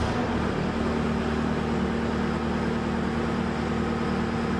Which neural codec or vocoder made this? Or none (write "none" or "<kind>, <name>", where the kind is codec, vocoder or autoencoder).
none